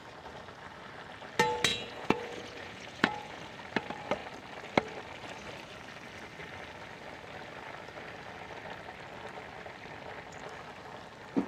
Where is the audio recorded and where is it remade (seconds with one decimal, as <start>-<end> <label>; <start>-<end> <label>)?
0.0-1.7 recorded; 1.7-3.4 remade; 3.4-11.5 recorded